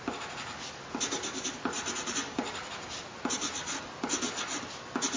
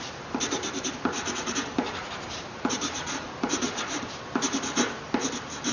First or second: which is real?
first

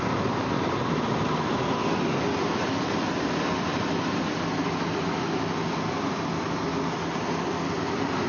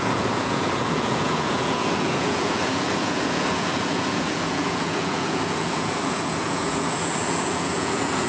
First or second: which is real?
first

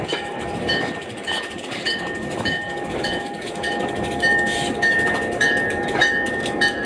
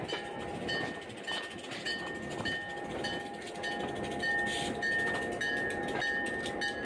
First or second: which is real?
second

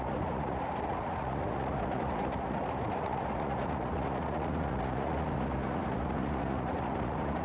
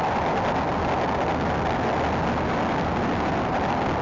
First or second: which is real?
second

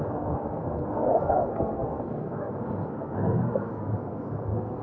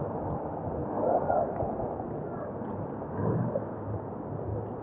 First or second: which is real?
second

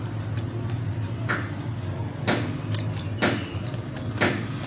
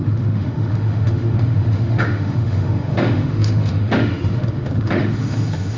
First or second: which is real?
first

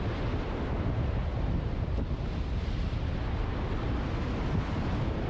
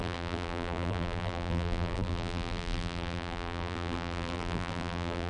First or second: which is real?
first